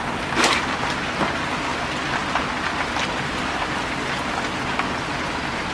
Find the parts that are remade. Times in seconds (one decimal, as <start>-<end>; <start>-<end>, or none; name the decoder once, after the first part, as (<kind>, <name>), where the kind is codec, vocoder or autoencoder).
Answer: none